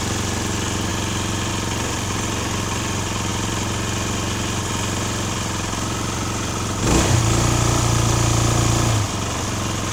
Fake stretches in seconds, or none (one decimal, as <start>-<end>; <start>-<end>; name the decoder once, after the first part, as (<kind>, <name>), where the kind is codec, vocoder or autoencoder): 0.9-1.5 (vocoder, BigVGAN v2); 3.3-7.2